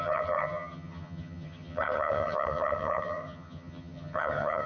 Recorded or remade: remade